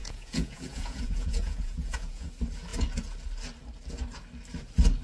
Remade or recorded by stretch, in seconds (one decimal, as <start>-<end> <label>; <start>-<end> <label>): 0.0-2.3 remade; 2.3-5.0 recorded